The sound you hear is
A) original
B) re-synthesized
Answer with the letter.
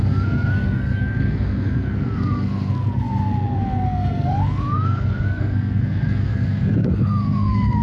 B